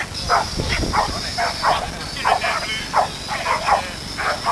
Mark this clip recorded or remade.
recorded